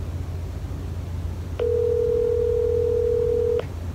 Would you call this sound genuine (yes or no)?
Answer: yes